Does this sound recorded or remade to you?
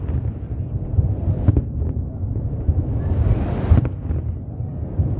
recorded